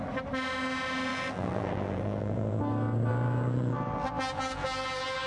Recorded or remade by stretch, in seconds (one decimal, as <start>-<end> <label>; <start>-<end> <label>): 0.0-1.1 recorded; 1.1-2.6 remade; 2.6-3.1 recorded; 3.1-5.3 remade